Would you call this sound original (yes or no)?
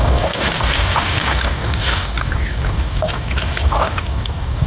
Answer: no